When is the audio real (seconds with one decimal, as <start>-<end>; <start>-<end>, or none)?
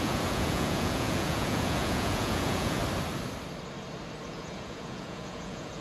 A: 2.8-4.3